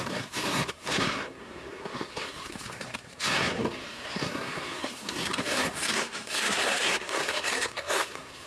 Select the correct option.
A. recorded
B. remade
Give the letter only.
B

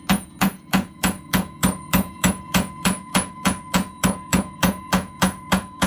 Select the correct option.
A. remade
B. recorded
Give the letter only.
A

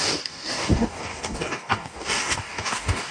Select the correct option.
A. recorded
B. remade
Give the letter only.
B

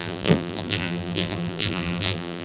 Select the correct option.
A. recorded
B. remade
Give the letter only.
B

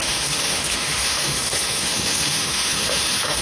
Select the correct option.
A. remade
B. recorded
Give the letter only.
A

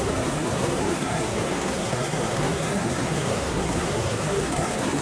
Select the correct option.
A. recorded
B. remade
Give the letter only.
B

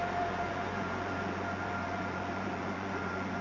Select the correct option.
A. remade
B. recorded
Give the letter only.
A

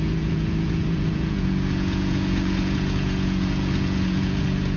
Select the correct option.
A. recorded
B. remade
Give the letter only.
B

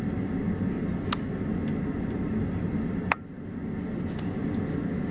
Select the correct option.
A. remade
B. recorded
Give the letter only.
B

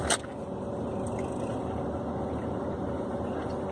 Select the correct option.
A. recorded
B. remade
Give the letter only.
A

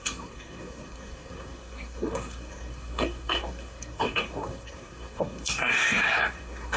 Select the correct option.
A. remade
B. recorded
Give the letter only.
A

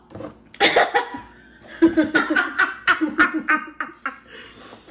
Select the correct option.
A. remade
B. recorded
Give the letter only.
B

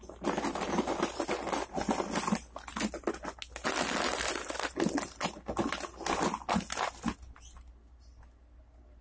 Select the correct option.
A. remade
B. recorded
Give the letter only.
B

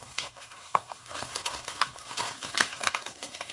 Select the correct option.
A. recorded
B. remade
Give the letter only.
B